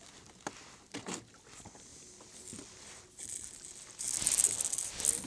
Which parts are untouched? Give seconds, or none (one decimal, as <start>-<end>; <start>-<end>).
0.0-5.3